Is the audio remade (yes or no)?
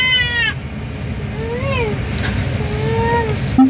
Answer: no